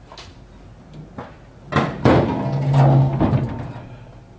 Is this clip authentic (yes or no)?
yes